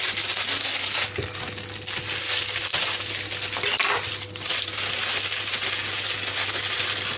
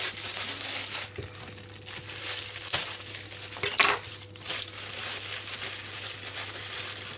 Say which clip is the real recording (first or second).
first